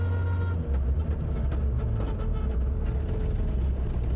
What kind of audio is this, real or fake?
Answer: real